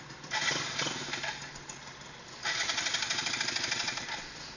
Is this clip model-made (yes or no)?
no